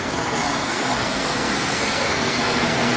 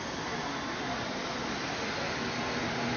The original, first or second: second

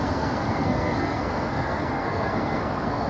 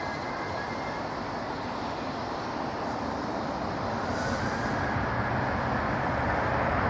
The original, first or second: second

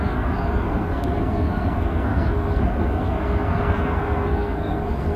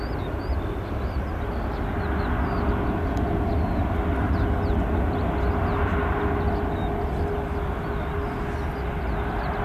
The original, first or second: second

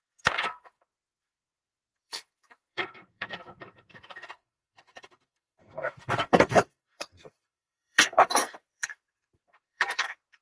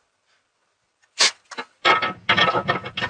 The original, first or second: second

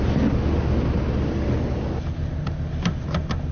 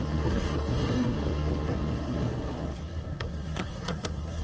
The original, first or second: first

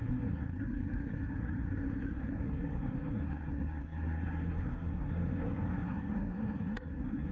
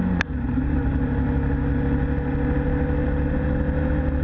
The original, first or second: second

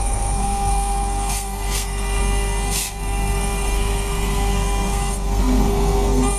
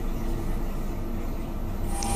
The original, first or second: second